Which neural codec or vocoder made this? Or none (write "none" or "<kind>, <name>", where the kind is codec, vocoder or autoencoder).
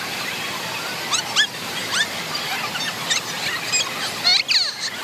none